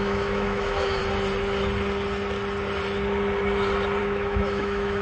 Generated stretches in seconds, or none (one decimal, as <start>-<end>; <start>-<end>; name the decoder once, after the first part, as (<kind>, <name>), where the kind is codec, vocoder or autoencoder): 0.0-1.0 (autoencoder, DAC-VAE); 4.0-5.0